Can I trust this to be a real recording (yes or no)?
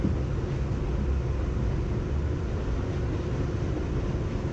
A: yes